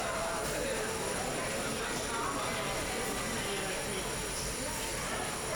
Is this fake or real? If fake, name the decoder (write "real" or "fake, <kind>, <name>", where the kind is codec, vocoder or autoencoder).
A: real